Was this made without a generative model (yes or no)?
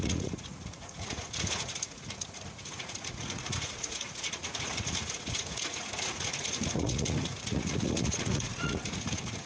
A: no